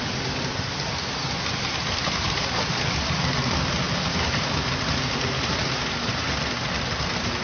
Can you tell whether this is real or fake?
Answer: real